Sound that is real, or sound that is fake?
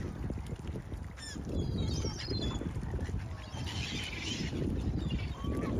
real